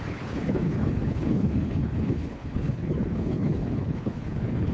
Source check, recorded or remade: remade